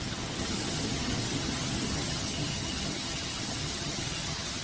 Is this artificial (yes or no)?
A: yes